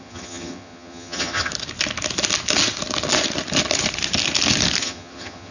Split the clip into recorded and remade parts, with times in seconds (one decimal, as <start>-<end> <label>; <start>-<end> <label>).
0.0-1.5 remade; 1.5-4.8 recorded; 4.8-5.5 remade